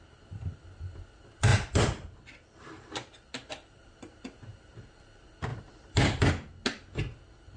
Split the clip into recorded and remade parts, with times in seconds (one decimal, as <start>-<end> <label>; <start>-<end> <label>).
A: 0.0-1.5 recorded; 1.5-3.8 remade; 3.8-5.5 recorded; 5.5-6.3 remade; 6.3-7.6 recorded